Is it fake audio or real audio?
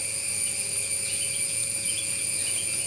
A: fake